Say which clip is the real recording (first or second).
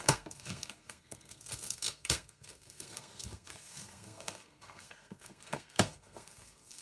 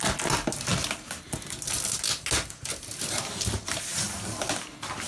second